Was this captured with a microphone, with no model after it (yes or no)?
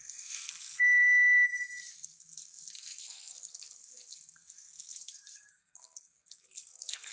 no